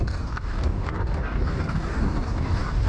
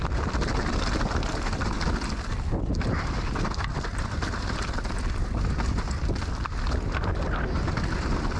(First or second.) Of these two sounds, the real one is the second